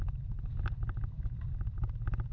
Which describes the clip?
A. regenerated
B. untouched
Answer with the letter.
B